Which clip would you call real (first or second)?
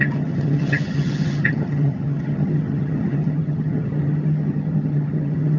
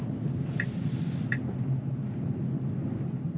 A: second